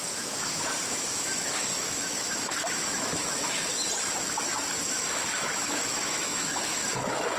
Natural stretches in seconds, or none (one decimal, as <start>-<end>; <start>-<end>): 3.7-4.9